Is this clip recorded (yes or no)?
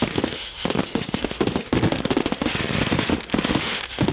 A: no